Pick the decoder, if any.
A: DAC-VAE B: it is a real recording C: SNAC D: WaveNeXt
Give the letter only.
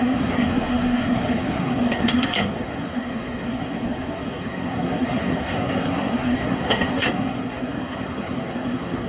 C